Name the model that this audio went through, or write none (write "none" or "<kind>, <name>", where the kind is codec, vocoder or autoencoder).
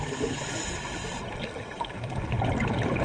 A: none